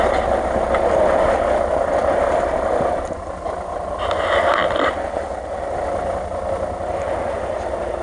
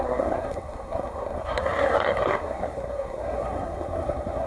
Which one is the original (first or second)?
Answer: first